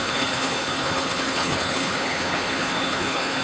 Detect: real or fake fake